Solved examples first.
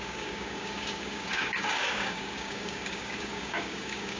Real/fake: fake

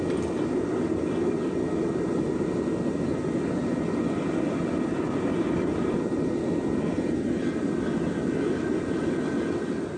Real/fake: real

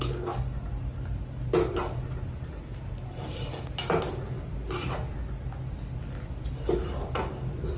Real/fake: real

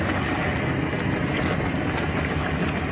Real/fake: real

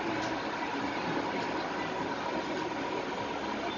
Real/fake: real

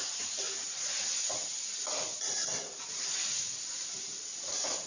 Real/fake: real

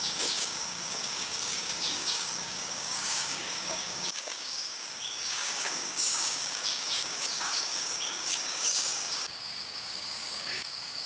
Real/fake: fake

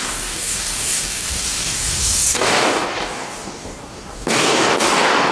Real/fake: fake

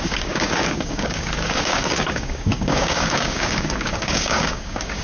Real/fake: fake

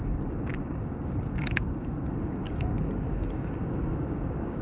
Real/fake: fake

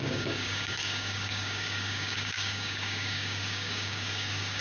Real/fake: fake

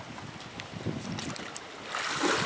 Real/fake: real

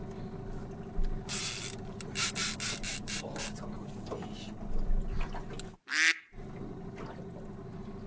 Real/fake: real